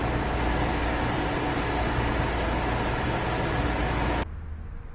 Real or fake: real